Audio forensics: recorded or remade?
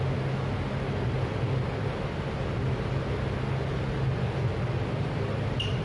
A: recorded